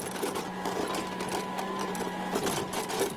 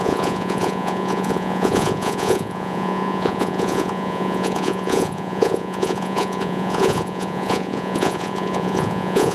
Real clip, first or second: first